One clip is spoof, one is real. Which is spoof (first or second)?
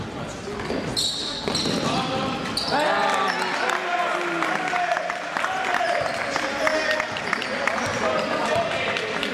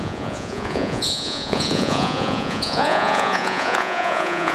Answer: second